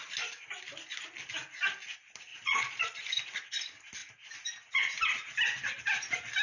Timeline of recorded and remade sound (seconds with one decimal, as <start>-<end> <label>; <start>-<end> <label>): 0.0-2.3 recorded; 2.3-3.0 remade; 3.0-6.4 recorded